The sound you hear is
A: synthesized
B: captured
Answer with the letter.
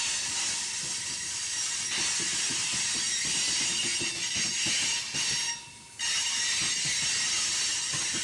B